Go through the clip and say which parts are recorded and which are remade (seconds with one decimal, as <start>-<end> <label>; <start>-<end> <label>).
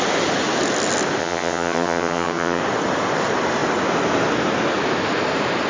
0.0-1.2 recorded; 1.2-2.6 remade; 2.6-5.7 recorded